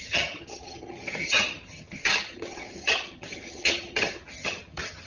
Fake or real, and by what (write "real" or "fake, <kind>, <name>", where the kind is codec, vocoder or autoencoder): fake, vocoder, HiFi-GAN